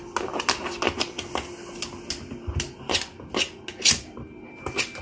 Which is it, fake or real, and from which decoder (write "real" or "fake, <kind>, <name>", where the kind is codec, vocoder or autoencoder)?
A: real